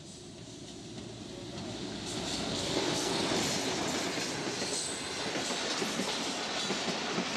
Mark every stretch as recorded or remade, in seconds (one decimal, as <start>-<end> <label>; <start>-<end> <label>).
0.0-2.5 recorded; 2.5-3.2 remade; 3.2-7.4 recorded